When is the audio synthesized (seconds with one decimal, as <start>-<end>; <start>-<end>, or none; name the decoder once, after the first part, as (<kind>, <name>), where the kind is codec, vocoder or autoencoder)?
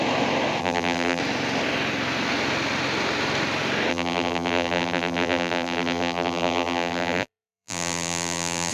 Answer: 0.6-1.2 (vocoder, BigVGAN v2); 3.9-8.7